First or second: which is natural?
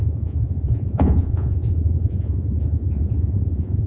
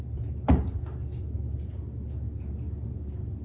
second